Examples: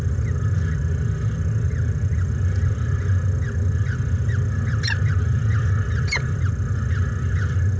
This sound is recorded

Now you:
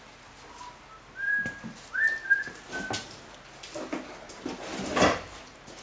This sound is recorded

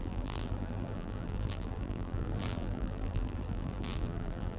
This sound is remade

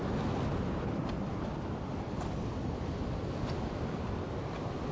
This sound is recorded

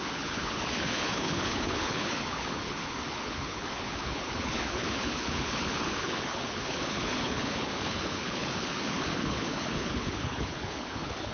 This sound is remade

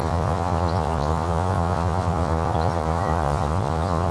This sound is remade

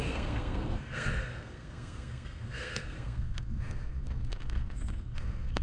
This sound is remade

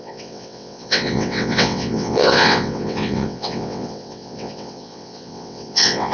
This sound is remade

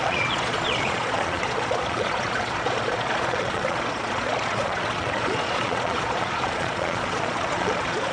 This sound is remade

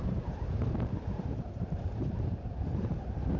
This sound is remade